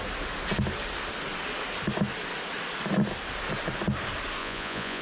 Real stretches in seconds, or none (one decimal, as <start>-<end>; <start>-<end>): 0.0-4.4